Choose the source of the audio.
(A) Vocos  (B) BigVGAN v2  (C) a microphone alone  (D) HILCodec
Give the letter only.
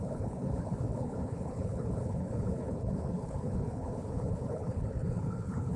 D